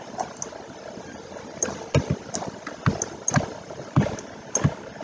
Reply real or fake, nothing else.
real